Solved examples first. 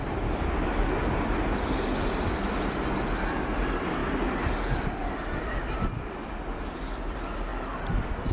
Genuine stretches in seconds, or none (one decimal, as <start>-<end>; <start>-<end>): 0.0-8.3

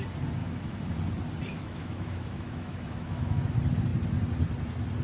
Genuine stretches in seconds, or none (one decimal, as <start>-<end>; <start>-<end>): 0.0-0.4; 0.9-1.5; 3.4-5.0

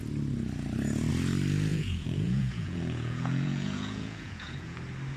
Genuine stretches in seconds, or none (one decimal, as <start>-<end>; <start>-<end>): 0.0-1.7; 4.8-5.2